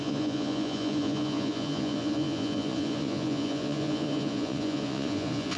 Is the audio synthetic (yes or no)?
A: yes